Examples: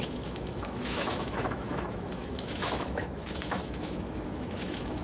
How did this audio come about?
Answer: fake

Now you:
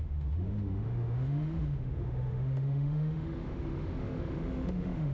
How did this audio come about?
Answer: fake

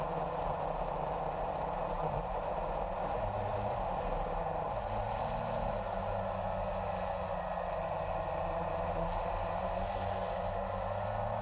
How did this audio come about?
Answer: real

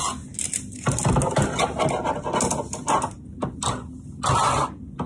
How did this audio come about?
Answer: real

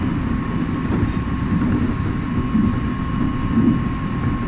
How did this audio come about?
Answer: real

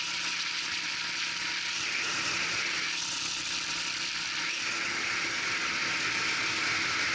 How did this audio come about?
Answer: real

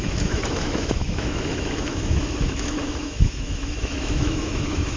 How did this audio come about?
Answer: fake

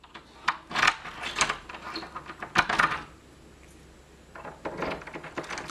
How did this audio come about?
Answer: real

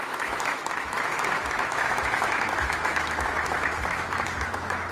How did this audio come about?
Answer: fake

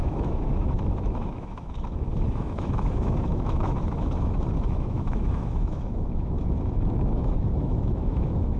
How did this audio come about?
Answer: fake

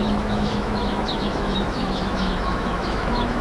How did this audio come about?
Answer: fake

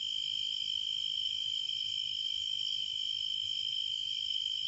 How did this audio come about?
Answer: fake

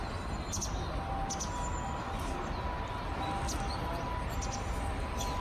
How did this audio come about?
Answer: real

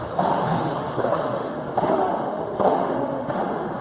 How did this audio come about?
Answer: fake